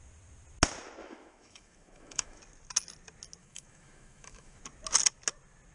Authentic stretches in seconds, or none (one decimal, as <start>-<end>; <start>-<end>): 0.0-1.0; 2.4-3.4; 4.6-5.7